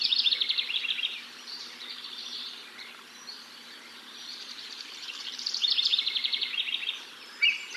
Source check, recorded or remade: remade